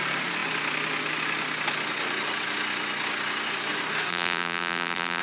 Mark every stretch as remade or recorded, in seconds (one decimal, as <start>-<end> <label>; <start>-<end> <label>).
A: 0.0-4.1 recorded; 4.1-5.2 remade